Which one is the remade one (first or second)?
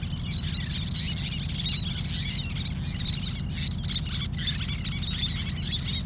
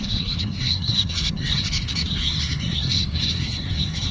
second